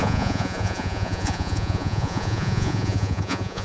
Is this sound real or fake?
fake